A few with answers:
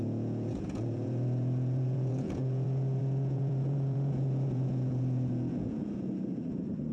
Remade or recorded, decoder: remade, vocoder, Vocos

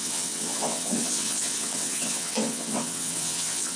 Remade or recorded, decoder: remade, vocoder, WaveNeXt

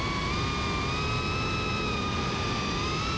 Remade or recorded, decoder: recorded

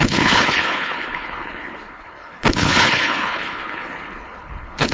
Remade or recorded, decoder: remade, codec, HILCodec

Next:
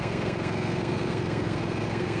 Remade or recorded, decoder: remade, codec, SNAC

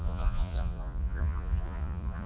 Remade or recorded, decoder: remade, vocoder, Vocos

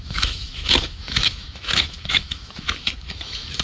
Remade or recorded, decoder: remade, autoencoder, DAC-VAE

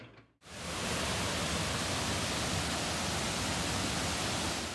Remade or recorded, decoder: recorded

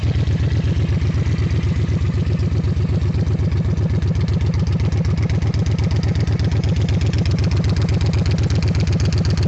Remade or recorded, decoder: recorded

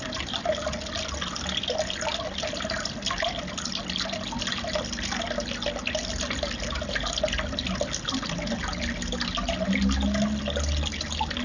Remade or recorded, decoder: recorded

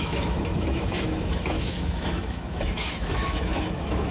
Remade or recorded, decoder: remade, autoencoder, DAC-VAE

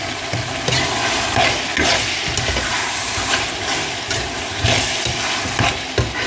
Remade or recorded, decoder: recorded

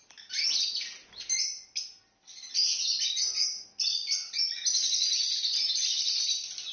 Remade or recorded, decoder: recorded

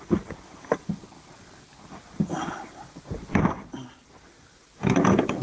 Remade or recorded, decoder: recorded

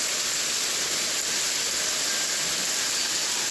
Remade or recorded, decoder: recorded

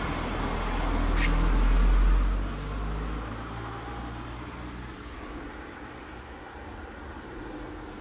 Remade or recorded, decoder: recorded